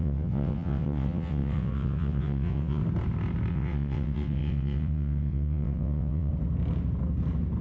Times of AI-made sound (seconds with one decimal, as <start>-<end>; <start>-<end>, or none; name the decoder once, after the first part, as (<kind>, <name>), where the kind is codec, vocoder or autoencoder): 0.0-2.8 (vocoder, WaveNeXt); 3.5-6.3